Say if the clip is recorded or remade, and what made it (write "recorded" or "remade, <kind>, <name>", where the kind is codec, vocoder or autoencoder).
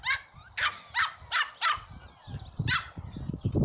remade, vocoder, BigVGAN v2